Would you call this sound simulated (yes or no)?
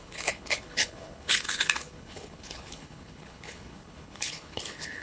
yes